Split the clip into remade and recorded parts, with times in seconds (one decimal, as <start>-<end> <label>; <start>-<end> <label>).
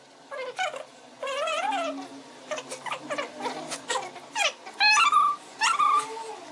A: 0.0-0.9 recorded; 0.9-1.7 remade; 1.7-6.5 recorded